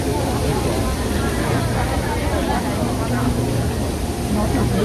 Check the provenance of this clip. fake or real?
real